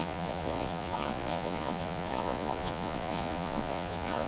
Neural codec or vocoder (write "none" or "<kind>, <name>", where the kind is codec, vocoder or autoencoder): vocoder, Vocos